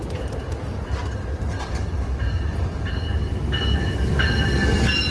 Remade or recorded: recorded